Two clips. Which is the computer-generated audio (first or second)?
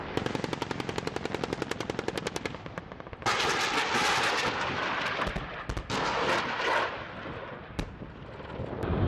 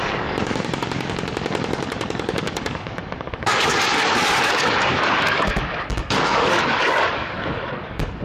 second